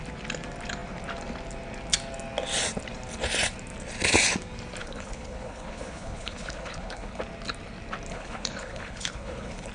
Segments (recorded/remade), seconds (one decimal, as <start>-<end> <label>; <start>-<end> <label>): 0.0-4.8 recorded; 4.8-7.2 remade; 7.2-8.1 recorded; 8.1-9.7 remade